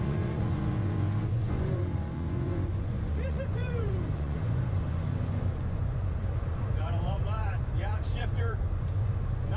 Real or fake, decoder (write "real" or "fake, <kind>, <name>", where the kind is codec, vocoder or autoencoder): fake, vocoder, Vocos